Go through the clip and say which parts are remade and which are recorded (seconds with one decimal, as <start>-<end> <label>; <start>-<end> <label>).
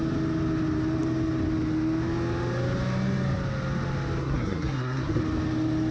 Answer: 0.0-4.2 recorded; 4.2-5.2 remade; 5.2-5.9 recorded